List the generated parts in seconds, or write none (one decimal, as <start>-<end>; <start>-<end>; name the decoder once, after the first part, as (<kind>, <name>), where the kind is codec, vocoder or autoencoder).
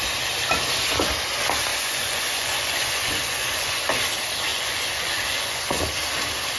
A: 1.7-3.8 (vocoder, Vocos); 4.5-5.8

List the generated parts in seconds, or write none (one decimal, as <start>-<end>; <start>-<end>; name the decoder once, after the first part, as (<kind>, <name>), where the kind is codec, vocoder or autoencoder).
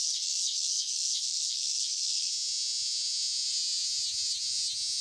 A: 0.0-2.3 (codec, SNAC)